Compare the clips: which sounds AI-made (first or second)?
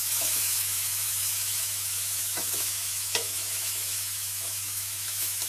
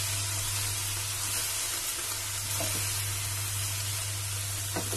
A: first